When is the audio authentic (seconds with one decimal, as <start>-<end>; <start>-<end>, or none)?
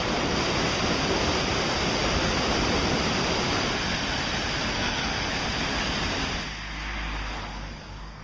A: 0.0-4.7; 5.3-8.2